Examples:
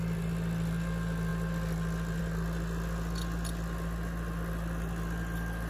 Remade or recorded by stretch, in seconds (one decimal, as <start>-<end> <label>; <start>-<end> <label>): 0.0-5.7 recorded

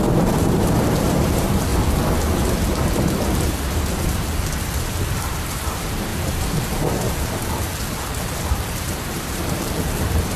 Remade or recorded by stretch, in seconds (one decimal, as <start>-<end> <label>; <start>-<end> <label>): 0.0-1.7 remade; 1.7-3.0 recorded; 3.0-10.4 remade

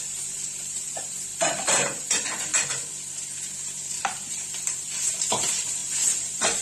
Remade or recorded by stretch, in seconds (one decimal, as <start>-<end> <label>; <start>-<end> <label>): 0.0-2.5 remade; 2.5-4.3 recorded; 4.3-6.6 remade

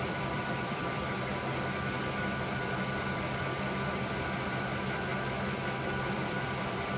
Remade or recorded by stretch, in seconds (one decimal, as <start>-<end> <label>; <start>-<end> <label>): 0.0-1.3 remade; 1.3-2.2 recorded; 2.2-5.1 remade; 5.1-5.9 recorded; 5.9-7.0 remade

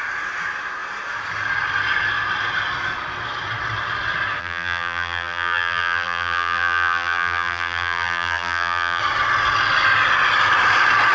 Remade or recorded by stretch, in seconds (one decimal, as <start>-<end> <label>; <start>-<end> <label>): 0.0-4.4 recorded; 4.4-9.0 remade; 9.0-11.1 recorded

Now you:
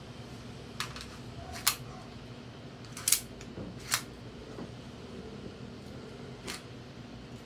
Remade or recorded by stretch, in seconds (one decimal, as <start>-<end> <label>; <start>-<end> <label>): 0.0-4.4 recorded; 4.4-5.2 remade; 5.2-7.5 recorded

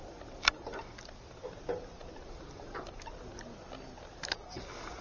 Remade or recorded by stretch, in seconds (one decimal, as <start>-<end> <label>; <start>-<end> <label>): 0.0-5.0 recorded

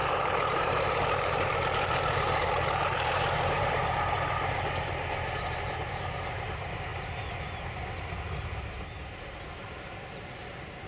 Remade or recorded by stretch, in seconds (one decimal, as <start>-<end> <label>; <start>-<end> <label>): 0.0-6.9 remade; 6.9-9.2 recorded; 9.2-10.9 remade